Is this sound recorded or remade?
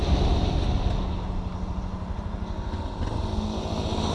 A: recorded